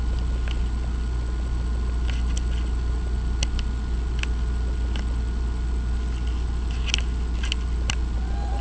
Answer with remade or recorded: recorded